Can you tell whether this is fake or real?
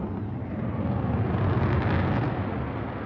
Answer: real